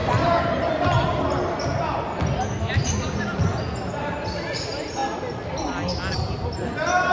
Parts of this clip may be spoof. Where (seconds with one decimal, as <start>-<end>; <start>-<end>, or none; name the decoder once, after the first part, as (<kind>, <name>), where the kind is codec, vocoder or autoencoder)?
0.0-0.7 (vocoder, BigVGAN v2)